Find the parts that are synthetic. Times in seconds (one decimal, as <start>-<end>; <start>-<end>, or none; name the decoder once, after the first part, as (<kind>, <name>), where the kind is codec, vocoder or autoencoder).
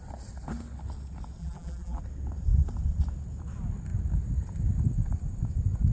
1.4-2.0 (vocoder, BigVGAN v2)